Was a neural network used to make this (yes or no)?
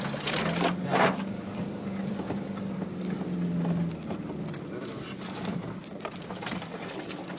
no